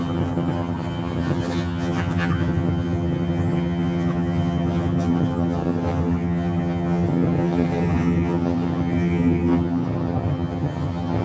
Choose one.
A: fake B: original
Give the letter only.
A